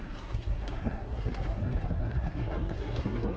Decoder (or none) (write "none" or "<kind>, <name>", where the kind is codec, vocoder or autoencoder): codec, SNAC